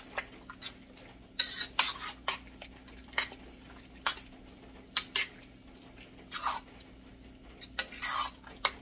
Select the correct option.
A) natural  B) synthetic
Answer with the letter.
A